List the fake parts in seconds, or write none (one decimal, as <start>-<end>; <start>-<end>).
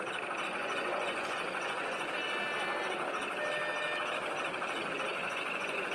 0.6-2.1; 5.1-5.9